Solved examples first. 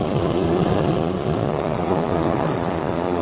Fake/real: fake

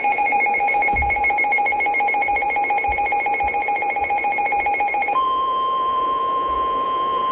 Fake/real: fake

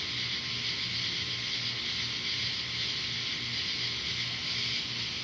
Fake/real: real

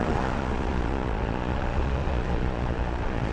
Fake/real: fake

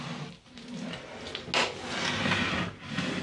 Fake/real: real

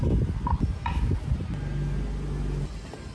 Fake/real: real